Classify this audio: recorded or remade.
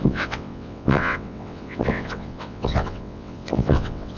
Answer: remade